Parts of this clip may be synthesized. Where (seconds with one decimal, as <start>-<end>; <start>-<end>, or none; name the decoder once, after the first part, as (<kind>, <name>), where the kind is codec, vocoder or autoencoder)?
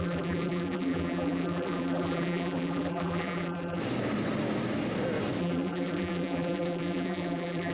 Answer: 0.0-3.8 (vocoder, BigVGAN v2); 5.4-7.7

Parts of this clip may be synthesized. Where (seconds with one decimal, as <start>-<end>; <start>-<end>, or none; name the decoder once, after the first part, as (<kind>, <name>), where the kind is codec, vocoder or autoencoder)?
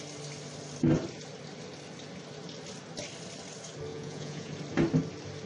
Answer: 3.9-4.5 (vocoder, Vocos)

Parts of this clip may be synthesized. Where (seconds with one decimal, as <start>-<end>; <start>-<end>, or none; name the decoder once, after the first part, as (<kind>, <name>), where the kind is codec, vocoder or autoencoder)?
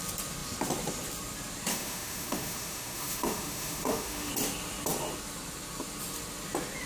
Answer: 1.7-4.3 (autoencoder, DAC-VAE)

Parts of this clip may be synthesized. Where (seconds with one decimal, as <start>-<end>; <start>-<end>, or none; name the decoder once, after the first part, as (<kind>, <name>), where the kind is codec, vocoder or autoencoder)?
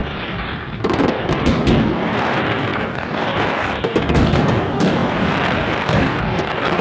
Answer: 0.0-6.8 (codec, DAC)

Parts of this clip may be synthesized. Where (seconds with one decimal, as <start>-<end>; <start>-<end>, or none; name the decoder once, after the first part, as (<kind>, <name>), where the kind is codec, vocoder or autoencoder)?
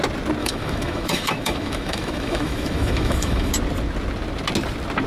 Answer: 0.4-3.5 (autoencoder, DAC-VAE)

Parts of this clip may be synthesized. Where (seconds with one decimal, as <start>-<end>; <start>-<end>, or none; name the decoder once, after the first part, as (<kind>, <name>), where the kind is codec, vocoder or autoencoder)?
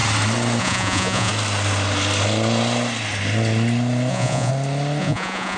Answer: 0.6-1.3 (vocoder, Vocos); 4.1-4.5; 5.0-5.6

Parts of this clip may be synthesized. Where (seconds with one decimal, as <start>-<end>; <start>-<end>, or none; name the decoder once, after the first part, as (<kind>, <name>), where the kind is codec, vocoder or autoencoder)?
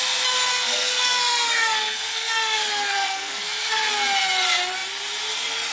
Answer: 0.5-3.9 (codec, SNAC)